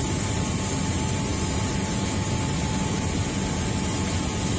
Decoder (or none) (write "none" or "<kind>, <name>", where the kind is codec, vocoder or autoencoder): none